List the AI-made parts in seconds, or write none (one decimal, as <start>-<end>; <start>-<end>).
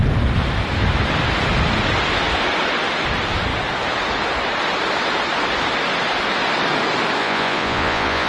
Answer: 7.2-8.3